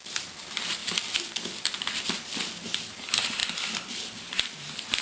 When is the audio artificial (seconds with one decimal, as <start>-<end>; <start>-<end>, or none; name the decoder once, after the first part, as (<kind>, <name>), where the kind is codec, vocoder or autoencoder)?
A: none